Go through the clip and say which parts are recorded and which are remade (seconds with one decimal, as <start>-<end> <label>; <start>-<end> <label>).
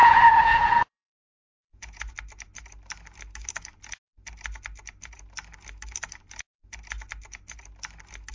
0.0-2.1 remade; 2.1-8.3 recorded